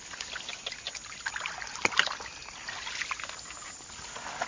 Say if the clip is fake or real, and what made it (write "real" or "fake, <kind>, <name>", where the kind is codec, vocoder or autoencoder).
real